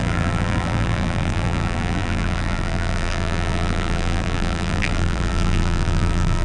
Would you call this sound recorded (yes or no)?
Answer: no